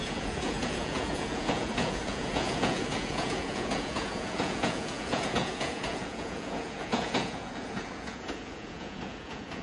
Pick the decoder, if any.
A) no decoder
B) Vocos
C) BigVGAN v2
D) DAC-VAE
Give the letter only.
B